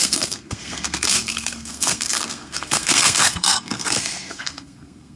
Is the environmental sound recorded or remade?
remade